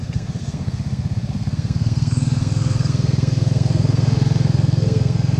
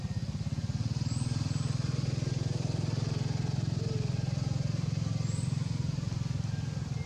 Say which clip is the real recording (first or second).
second